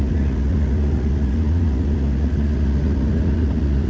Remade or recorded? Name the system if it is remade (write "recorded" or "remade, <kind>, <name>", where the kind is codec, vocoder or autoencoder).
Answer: remade, vocoder, Vocos